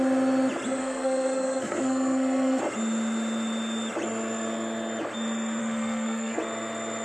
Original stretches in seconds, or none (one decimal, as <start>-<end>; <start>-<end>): 0.0-0.8; 2.6-5.6; 6.4-7.0

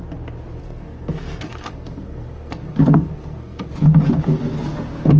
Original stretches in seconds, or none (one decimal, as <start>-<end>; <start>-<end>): 0.0-0.6; 3.7-5.2

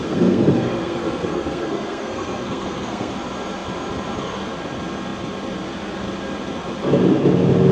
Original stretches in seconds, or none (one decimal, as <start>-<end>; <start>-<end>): 3.1-7.7

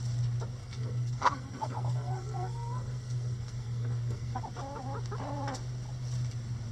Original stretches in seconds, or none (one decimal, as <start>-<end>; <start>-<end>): 0.0-0.6; 4.4-6.7

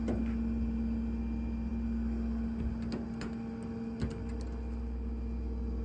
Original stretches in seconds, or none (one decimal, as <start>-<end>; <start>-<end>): 0.0-5.8

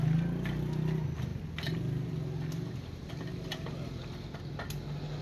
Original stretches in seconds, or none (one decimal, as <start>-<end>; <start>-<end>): 0.0-5.2